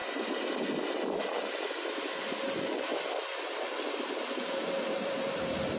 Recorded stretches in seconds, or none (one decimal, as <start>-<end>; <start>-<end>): 0.0-3.5